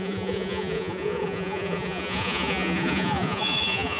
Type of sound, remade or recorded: remade